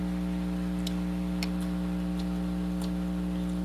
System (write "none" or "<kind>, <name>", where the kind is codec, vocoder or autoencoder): none